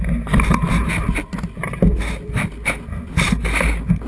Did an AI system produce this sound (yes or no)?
no